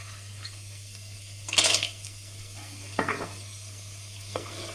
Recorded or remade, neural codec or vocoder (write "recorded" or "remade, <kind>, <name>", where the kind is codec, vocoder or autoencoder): remade, codec, SNAC